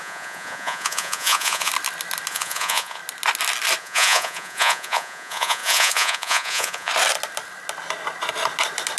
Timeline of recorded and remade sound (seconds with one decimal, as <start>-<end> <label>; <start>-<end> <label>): 0.0-1.7 remade; 1.7-2.3 recorded; 2.3-3.0 remade; 3.0-3.8 recorded; 3.8-6.9 remade; 6.9-9.0 recorded